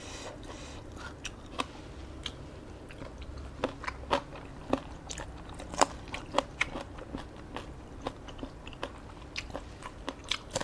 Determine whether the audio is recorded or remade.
recorded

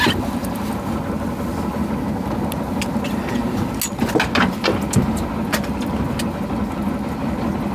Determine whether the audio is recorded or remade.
recorded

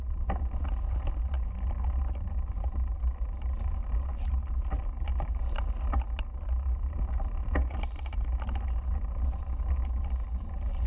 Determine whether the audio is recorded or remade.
recorded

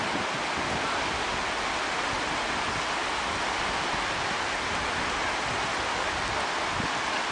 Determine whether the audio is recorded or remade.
recorded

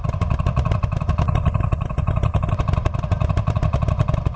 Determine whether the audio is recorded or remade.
recorded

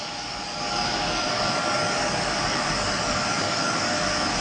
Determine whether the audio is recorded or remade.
remade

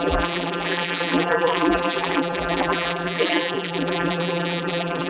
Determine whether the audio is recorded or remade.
remade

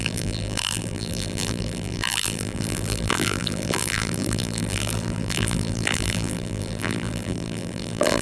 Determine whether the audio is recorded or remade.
remade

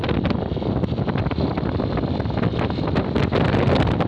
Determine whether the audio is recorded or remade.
recorded